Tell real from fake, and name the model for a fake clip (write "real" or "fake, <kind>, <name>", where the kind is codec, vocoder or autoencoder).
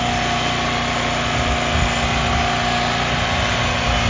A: real